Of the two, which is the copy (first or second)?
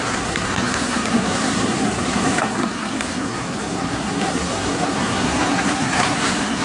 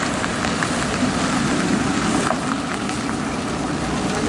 first